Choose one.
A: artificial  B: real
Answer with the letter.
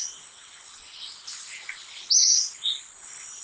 B